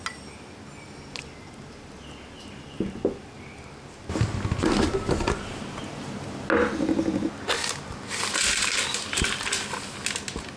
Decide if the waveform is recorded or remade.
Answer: recorded